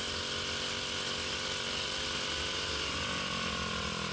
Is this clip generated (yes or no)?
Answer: no